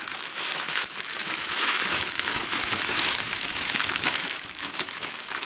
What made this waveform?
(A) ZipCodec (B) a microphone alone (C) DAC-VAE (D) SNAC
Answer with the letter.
C